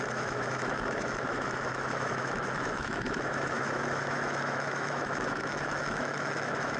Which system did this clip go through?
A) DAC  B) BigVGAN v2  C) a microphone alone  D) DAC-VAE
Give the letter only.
D